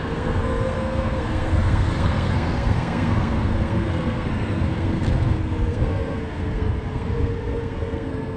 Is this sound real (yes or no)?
no